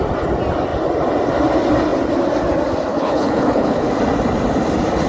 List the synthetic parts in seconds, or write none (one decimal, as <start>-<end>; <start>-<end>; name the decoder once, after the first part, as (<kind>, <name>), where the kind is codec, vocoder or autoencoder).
2.9-3.9 (codec, HILCodec)